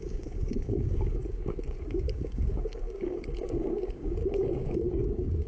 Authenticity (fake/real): fake